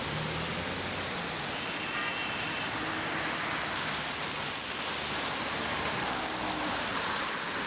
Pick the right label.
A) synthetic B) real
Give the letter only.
B